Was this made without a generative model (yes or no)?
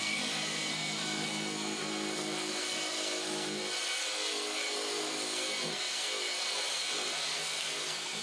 no